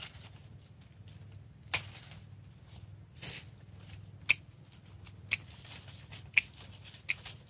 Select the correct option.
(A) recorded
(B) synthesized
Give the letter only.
A